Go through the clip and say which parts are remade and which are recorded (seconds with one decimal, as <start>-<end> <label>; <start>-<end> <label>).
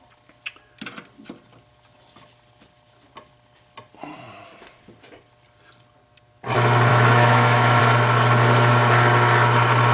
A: 0.0-6.9 recorded; 6.9-7.8 remade; 7.8-9.9 recorded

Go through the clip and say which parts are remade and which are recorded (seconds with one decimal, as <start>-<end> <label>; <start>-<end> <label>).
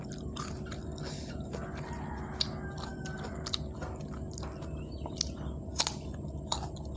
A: 0.0-7.0 recorded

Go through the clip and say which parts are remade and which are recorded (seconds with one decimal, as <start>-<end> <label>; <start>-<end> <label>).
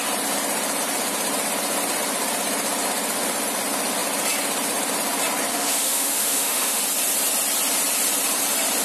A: 0.0-5.5 recorded; 5.5-6.8 remade; 6.8-8.8 recorded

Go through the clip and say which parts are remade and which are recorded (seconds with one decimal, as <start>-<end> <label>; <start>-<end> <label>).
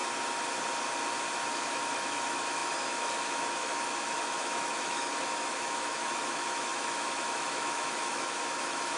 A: 0.0-1.5 recorded; 1.5-9.0 remade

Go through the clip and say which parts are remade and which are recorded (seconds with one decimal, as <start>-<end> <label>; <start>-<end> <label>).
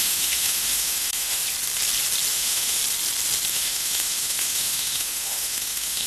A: 0.0-1.4 remade; 1.4-2.3 recorded; 2.3-2.8 remade; 2.8-3.5 recorded; 3.5-6.1 remade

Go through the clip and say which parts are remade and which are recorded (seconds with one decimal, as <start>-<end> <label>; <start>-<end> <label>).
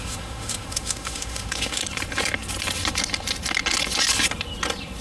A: 0.0-1.8 remade; 1.8-5.0 recorded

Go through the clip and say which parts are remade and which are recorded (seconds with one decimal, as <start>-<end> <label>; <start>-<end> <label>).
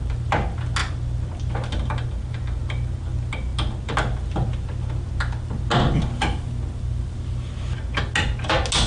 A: 0.0-8.9 recorded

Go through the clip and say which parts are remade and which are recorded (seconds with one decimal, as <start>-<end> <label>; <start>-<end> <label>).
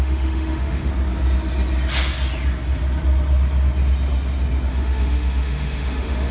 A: 0.0-0.9 remade; 0.9-4.7 recorded; 4.7-6.3 remade